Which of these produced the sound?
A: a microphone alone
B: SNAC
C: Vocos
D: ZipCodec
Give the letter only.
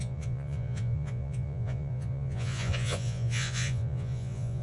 C